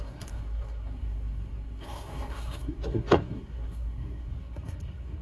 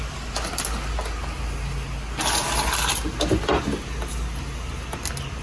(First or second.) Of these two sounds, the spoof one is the first